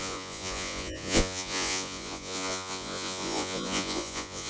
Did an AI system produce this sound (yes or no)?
yes